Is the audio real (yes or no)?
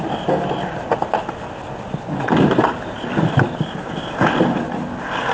yes